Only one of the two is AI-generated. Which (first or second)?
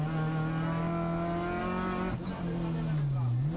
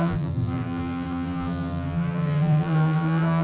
second